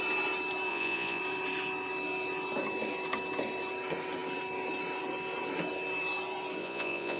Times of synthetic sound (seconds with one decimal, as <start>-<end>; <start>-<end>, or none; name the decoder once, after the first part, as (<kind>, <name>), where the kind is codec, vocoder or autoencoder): 0.7-1.2 (vocoder, Vocos); 6.6-7.2